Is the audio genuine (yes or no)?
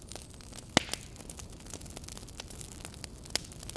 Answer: yes